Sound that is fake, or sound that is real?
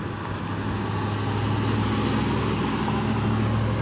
real